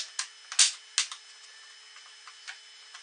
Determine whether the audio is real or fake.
real